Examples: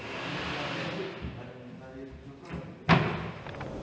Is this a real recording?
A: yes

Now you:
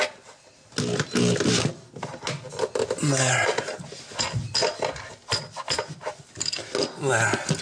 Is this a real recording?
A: yes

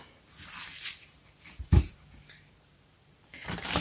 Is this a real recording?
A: no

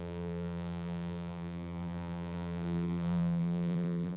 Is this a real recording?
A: no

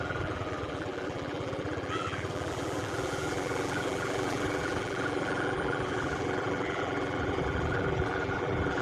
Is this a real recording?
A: no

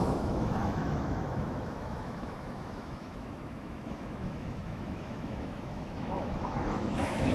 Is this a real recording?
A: no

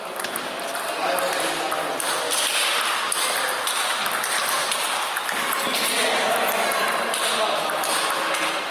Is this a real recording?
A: yes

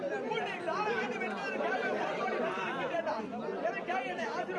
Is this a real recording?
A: no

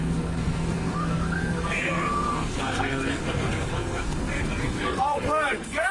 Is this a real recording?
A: no